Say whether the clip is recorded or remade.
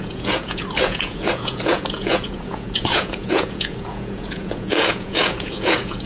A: remade